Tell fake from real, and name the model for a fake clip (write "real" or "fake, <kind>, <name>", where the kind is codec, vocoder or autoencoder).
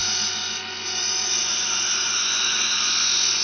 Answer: fake, vocoder, Vocos